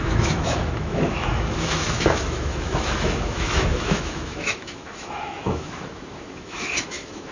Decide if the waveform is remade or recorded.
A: remade